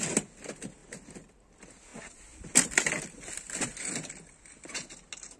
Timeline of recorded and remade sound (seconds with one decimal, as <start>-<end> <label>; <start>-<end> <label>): 0.0-5.4 recorded